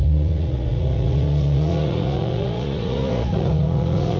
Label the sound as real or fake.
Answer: fake